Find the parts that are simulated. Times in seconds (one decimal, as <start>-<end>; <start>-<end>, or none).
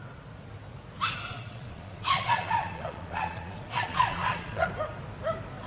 1.3-4.7